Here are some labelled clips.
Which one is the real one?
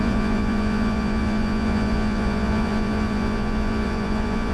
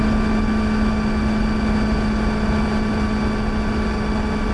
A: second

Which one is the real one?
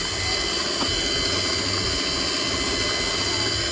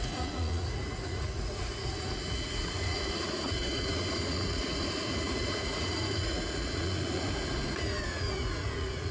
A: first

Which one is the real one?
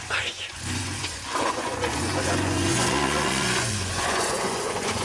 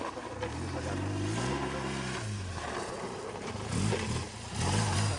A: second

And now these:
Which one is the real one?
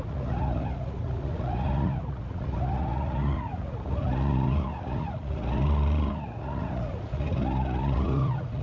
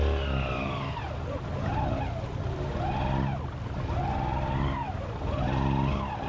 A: second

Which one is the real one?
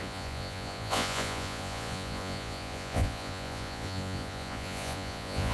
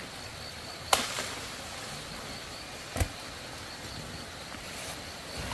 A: second